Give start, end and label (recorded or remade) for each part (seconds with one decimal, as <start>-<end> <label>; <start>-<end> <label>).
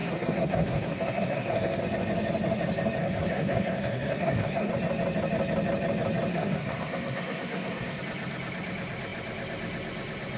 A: 0.0-1.8 remade; 1.8-3.0 recorded; 3.0-4.7 remade; 4.7-6.3 recorded; 6.3-8.0 remade; 8.0-10.4 recorded